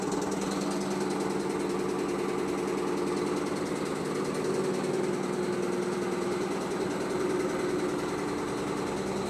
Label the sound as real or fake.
real